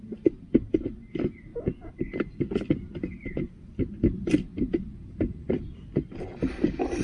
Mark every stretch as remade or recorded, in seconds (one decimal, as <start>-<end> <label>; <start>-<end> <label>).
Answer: 0.0-1.5 recorded; 1.5-5.5 remade; 5.5-7.0 recorded